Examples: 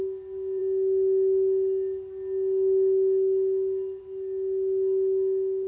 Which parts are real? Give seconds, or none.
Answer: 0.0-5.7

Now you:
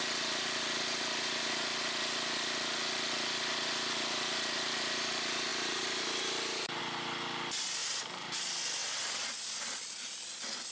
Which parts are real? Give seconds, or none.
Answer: 0.0-5.5; 6.8-7.8; 8.4-8.8; 9.7-10.7

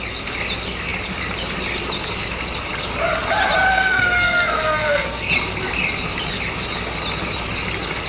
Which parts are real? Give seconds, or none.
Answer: 0.0-3.7; 5.3-8.1

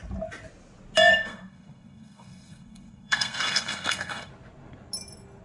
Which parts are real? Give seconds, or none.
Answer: 0.0-1.1; 4.3-5.4

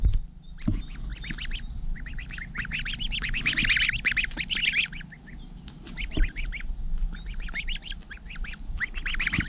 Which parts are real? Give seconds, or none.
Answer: 0.0-9.5

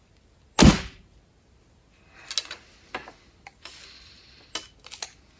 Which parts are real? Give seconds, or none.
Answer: 0.0-5.4

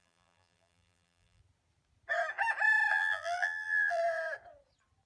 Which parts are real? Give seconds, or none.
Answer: 1.4-2.9; 4.0-5.1